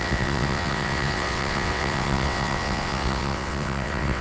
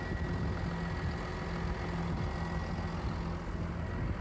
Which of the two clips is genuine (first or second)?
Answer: second